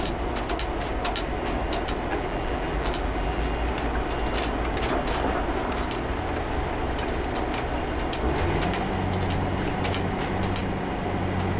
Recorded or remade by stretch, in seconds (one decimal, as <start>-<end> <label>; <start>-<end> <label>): 0.0-2.1 recorded; 2.1-3.5 remade; 3.5-11.6 recorded